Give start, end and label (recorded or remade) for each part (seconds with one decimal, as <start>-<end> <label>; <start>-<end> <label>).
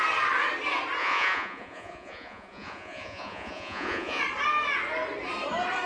0.0-1.0 recorded; 1.0-4.2 remade; 4.2-5.9 recorded